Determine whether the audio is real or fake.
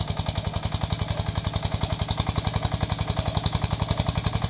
real